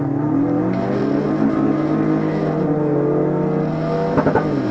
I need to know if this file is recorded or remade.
recorded